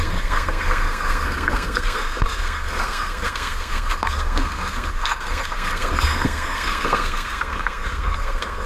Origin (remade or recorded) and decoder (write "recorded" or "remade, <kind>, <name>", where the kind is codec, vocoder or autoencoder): remade, codec, SNAC